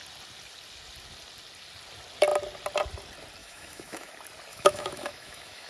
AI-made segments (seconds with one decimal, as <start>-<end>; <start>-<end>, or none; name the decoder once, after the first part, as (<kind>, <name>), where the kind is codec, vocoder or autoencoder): 3.4-4.1 (autoencoder, DAC-VAE); 4.5-5.7

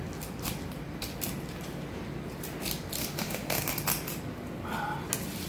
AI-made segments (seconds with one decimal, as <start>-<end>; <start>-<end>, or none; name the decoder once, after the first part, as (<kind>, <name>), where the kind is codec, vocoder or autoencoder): 3.0-3.7 (autoencoder, DAC-VAE)

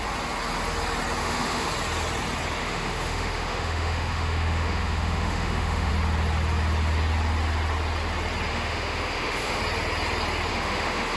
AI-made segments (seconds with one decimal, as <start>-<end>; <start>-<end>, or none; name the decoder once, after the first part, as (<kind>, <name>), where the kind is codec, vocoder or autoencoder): 1.2-1.7 (autoencoder, DAC-VAE); 2.6-5.9; 8.5-9.6; 10.5-11.2

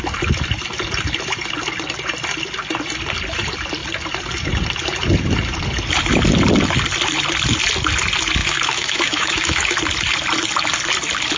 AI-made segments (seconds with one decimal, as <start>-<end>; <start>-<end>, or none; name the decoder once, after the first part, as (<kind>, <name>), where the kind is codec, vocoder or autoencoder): 8.4-9.8 (autoencoder, DAC-VAE)

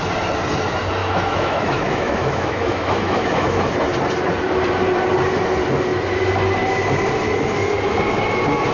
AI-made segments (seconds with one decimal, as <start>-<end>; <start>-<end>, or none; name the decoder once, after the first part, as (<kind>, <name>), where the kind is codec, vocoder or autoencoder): 1.0-3.7 (autoencoder, DAC-VAE)

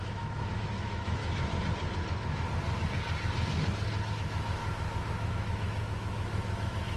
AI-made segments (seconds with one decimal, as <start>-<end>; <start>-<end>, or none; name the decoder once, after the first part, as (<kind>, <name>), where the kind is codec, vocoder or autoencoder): 0.0-1.2 (autoencoder, DAC-VAE); 4.1-4.6; 5.3-7.0

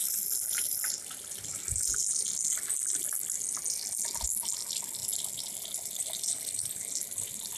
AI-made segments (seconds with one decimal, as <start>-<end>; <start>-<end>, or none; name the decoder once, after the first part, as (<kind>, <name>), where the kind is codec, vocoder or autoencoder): none